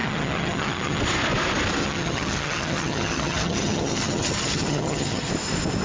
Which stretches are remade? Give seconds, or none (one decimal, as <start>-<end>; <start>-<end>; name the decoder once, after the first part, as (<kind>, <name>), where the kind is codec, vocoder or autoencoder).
0.0-1.0 (vocoder, HiFi-GAN); 1.8-5.3